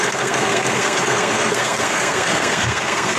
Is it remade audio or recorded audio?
remade